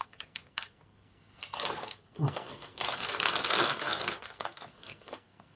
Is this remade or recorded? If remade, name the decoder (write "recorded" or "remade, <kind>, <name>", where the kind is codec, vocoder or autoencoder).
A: remade, codec, SNAC